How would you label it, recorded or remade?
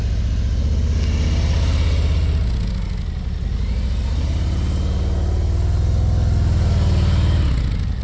recorded